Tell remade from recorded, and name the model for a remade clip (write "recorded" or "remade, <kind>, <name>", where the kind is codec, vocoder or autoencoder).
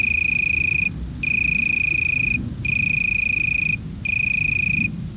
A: recorded